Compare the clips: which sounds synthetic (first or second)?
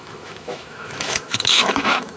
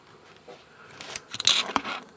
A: first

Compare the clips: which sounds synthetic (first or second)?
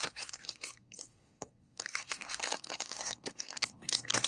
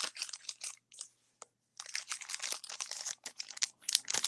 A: first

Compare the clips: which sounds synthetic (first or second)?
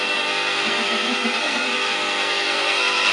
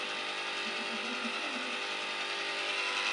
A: first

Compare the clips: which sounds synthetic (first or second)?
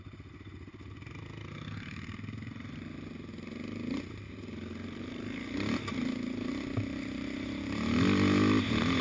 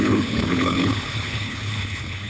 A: second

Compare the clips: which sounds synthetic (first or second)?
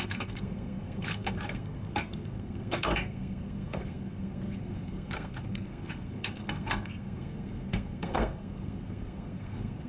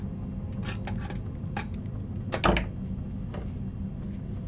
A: first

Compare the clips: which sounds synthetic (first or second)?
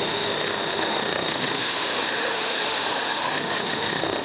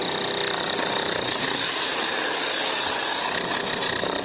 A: first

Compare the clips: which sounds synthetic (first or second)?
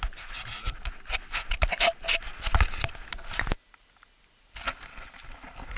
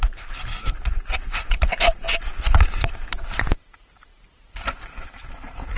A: second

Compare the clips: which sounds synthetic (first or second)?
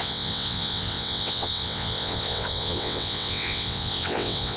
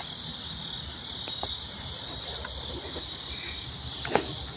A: first